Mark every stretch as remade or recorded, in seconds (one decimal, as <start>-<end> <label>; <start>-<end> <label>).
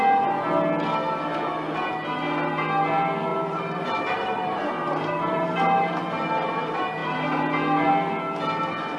0.0-3.3 recorded; 3.3-6.6 remade; 6.6-9.0 recorded